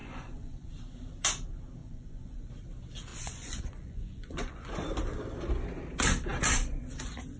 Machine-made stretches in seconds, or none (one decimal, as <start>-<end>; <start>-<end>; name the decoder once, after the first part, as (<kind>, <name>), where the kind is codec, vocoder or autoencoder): 0.0-0.7 (vocoder, Vocos); 1.8-2.5; 3.1-4.7